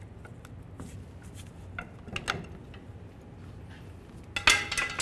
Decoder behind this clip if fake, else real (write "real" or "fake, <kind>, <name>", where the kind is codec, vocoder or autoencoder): real